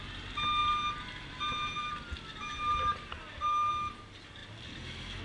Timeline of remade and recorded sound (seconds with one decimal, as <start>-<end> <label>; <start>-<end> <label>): 0.0-5.2 recorded